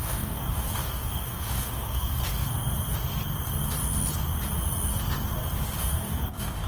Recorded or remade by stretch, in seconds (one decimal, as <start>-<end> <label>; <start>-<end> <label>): 0.0-2.2 remade; 2.2-5.8 recorded; 5.8-6.7 remade